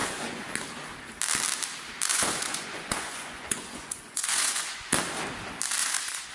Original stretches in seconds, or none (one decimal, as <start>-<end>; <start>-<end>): 0.5-2.1; 4.9-5.8